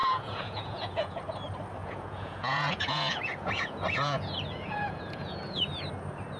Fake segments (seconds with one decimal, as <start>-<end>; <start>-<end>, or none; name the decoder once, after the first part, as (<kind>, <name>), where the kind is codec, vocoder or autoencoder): 0.0-1.2 (vocoder, Vocos); 1.8-5.6